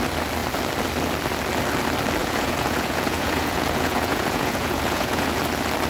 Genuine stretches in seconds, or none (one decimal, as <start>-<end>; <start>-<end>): 0.0-2.2; 5.4-5.9

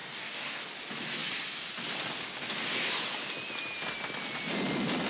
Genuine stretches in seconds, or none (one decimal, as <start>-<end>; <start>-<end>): 0.6-5.1

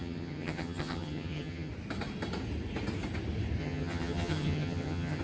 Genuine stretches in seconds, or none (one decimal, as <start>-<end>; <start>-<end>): 1.7-3.6

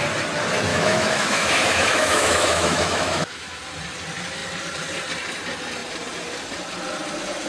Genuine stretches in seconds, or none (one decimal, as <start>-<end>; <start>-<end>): 0.0-0.7; 3.6-7.5

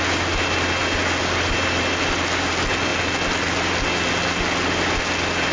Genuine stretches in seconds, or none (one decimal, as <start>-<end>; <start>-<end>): 0.0-5.5

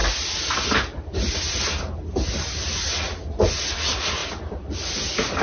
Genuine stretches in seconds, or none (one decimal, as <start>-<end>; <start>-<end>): 0.0-4.2; 4.9-5.4